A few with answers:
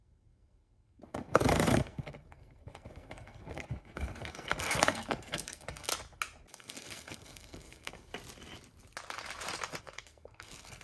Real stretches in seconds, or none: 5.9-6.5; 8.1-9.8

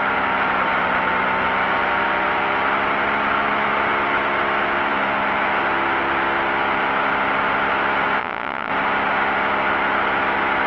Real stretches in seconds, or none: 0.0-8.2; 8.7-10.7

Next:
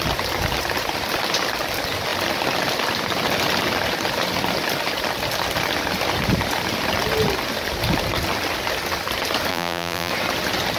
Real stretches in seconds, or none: 0.0-9.5; 10.1-10.8

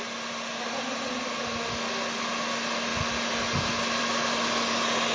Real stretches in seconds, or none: 0.0-5.1